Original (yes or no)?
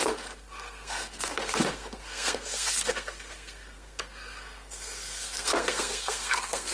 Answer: no